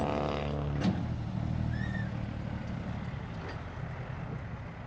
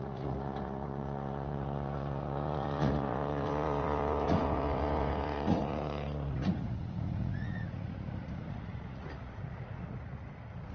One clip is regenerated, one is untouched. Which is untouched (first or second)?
first